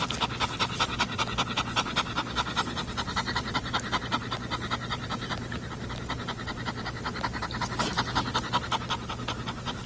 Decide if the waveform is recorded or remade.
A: recorded